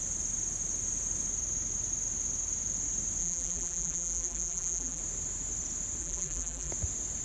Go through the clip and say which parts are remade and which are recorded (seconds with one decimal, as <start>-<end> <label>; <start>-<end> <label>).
0.0-3.2 recorded; 3.2-5.0 remade; 5.0-6.0 recorded; 6.0-6.7 remade; 6.7-7.2 recorded